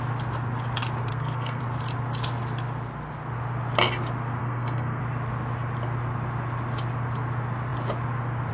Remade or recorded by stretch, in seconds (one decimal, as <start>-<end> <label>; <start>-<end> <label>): 0.0-1.1 recorded; 1.1-1.6 remade; 1.6-4.4 recorded; 4.4-5.0 remade; 5.0-8.5 recorded